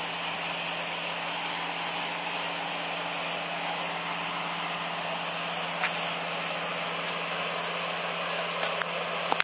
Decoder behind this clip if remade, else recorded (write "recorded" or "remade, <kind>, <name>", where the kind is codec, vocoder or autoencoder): recorded